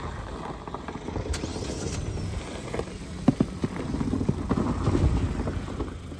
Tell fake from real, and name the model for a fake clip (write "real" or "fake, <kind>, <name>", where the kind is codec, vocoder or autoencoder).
real